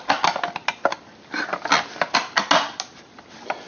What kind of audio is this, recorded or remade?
recorded